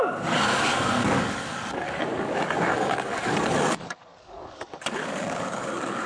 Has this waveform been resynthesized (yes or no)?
yes